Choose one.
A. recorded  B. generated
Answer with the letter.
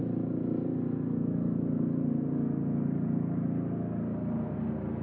A